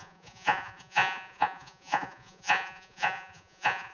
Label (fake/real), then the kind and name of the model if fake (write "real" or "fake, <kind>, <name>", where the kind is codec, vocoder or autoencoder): fake, vocoder, Vocos